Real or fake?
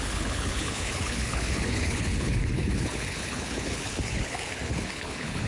fake